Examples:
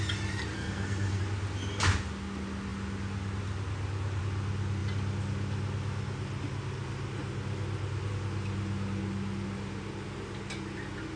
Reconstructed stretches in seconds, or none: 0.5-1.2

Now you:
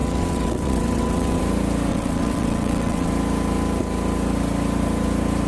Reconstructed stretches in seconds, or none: 0.0-1.4; 1.9-3.1

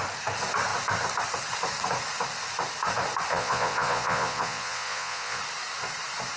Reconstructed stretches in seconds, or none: 3.3-5.4

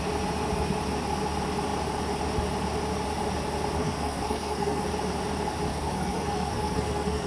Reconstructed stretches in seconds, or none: 3.8-4.8; 5.7-7.3

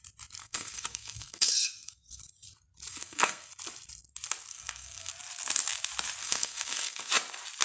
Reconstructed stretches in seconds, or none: 0.4-2.2; 2.9-3.5; 4.5-5.1; 6.2-7.1